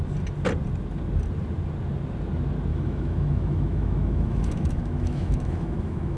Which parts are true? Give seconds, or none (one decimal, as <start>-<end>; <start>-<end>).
0.0-2.7

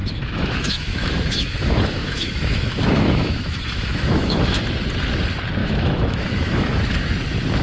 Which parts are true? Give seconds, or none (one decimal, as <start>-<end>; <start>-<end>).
4.6-5.6; 6.8-7.6

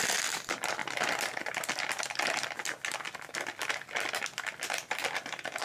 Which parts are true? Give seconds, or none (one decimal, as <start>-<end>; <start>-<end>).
0.0-5.6

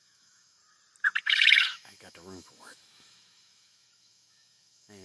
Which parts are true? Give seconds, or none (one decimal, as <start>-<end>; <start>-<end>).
0.6-1.2

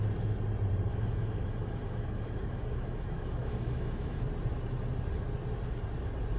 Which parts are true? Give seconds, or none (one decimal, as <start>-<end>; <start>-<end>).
0.0-0.9; 4.2-6.4

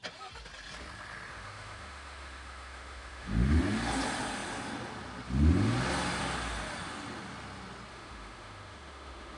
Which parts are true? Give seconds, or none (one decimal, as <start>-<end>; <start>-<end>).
0.0-1.3; 3.6-7.9

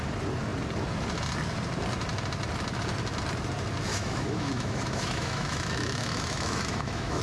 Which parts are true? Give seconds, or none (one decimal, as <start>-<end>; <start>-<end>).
0.0-3.9